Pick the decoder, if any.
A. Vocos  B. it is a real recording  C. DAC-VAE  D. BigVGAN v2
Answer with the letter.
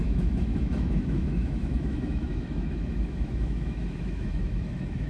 C